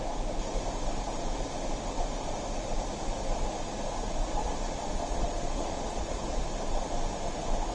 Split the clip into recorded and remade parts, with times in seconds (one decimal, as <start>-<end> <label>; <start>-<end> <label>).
0.0-4.4 recorded; 4.4-6.4 remade; 6.4-7.7 recorded